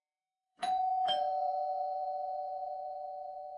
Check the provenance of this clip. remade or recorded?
remade